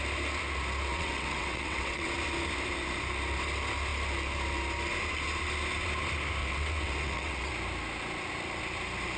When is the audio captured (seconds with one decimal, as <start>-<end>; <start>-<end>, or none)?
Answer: 0.0-0.9; 2.1-6.4; 7.5-9.2